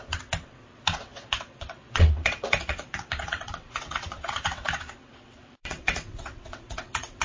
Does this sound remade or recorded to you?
remade